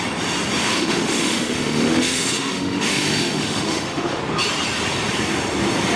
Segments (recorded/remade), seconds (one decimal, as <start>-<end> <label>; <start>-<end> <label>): 0.0-0.6 recorded; 0.6-4.2 remade; 4.2-6.0 recorded